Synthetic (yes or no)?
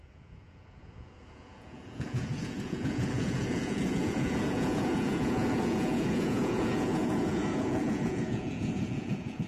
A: yes